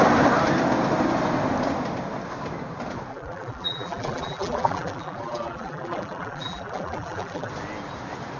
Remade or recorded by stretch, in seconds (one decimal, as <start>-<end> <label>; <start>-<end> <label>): 0.0-3.1 recorded; 3.1-7.5 remade; 7.5-8.4 recorded

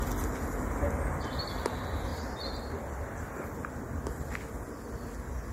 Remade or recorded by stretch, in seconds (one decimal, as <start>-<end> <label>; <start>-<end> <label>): 0.0-2.1 recorded; 2.1-2.8 remade; 2.8-5.5 recorded

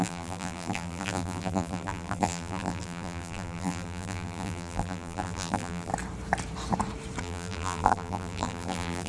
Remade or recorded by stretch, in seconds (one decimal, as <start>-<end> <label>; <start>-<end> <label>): 0.0-5.9 remade; 5.9-7.2 recorded; 7.2-9.1 remade

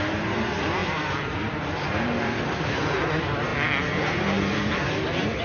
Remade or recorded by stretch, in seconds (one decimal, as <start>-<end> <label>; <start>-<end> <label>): 0.0-5.4 remade

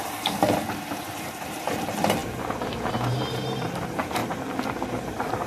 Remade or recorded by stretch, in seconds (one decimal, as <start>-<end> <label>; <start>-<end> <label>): 0.0-4.2 remade; 4.2-4.7 recorded; 4.7-5.5 remade

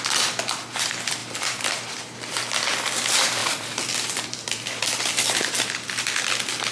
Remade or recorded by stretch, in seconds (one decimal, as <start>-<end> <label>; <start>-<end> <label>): 0.0-1.2 recorded; 1.2-1.9 remade; 1.9-3.4 recorded; 3.4-5.3 remade; 5.3-6.7 recorded

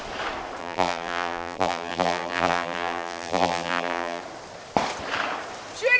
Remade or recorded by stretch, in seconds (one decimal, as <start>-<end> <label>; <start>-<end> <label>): 0.0-0.6 recorded; 0.6-4.2 remade; 4.2-6.0 recorded

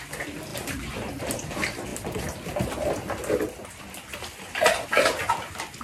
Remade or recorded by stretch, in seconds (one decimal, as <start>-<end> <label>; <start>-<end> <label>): 0.0-5.8 recorded